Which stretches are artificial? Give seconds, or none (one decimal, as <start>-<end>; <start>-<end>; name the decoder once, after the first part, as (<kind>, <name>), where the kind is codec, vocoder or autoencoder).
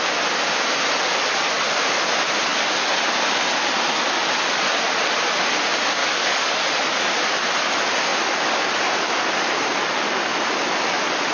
6.0-6.5 (codec, DAC)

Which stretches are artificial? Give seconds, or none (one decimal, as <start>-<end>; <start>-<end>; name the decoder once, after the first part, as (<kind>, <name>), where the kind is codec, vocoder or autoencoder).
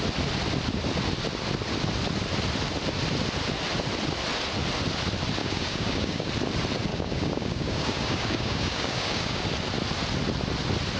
5.4-6.3 (codec, DAC); 6.9-9.4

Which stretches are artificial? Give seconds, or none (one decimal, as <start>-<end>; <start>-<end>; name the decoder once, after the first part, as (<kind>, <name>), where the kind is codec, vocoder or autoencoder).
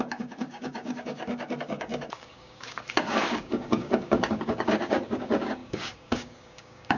0.0-7.0 (codec, DAC)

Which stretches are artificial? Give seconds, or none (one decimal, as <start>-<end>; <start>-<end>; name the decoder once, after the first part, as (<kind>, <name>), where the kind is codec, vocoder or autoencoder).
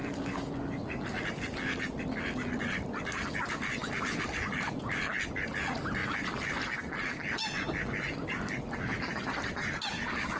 none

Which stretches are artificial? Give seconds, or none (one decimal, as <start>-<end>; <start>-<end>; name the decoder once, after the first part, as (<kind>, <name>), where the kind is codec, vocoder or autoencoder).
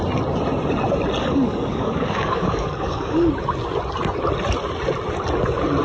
1.2-3.3 (codec, DAC)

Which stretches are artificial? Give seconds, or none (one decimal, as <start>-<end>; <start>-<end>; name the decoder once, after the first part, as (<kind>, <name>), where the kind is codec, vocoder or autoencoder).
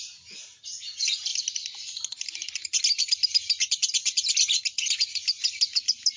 none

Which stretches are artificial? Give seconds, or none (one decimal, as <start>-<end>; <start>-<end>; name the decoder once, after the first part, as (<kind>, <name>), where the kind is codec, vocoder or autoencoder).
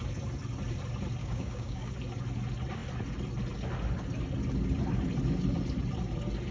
1.2-1.9 (codec, DAC)